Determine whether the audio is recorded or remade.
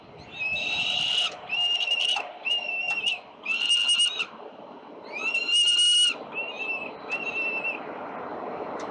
recorded